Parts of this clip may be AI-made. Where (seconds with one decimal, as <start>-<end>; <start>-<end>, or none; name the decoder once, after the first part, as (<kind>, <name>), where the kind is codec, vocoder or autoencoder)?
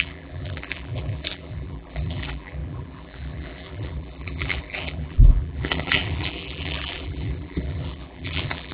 0.0-8.7 (vocoder, BigVGAN v2)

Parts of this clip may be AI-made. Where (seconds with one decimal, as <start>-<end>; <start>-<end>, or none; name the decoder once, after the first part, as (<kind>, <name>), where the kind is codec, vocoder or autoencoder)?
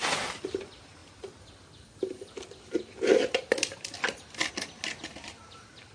1.0-4.5 (vocoder, BigVGAN v2)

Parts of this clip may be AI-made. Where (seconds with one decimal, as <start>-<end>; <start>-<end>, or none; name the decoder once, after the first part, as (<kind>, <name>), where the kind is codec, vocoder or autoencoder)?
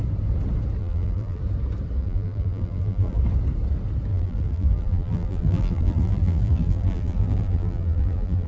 0.8-1.4 (vocoder, BigVGAN v2); 2.0-3.2; 4.1-8.5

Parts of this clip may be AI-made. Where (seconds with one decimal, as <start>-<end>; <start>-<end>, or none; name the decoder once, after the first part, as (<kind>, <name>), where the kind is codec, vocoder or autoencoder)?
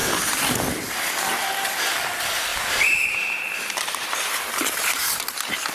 2.5-5.3 (vocoder, BigVGAN v2)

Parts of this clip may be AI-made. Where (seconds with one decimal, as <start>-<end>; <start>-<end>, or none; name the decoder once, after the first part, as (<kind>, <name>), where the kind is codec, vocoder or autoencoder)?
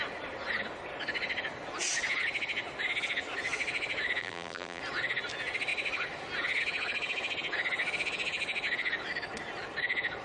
4.2-4.8 (vocoder, BigVGAN v2)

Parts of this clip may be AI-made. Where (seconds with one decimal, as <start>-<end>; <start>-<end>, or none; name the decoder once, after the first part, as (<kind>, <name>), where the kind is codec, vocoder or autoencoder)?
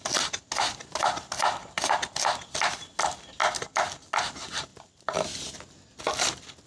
3.4-4.0 (vocoder, BigVGAN v2)